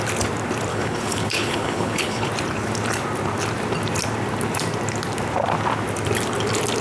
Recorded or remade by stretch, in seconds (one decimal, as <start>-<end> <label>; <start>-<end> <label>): 0.0-0.7 recorded; 0.7-2.3 remade; 2.3-6.8 recorded